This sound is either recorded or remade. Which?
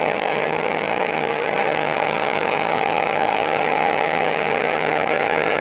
remade